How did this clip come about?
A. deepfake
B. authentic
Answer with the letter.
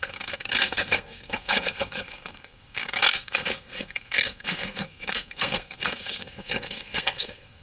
A